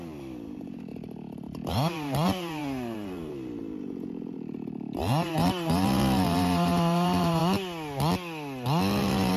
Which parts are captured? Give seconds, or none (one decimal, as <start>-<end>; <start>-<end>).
0.9-1.7; 7.4-9.0